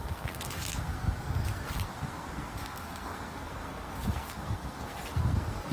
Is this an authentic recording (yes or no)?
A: no